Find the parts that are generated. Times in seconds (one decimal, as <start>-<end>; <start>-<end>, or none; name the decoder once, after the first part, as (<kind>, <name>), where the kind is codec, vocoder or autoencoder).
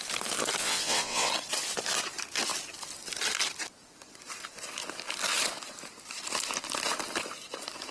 0.6-1.3 (vocoder, WaveNeXt)